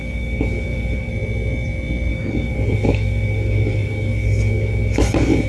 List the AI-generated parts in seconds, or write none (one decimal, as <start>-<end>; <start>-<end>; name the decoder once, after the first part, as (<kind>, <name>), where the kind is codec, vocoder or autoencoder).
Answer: 0.0-1.1 (codec, DAC); 2.1-5.5